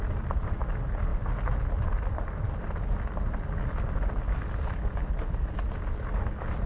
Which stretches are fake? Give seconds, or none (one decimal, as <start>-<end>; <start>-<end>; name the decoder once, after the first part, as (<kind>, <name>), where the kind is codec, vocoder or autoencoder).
none